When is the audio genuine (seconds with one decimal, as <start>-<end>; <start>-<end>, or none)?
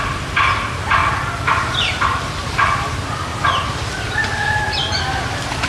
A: 0.0-5.7